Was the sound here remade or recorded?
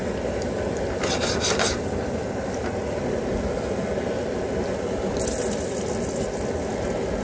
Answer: recorded